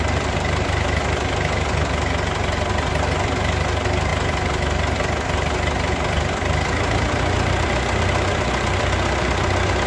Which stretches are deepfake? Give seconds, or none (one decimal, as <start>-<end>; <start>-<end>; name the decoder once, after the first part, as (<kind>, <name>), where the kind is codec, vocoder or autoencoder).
none